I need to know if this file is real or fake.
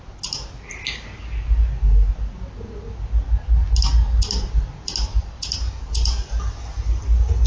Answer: real